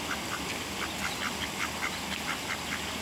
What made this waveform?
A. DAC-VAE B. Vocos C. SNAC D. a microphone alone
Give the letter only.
D